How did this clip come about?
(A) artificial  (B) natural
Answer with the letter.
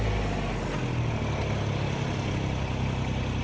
B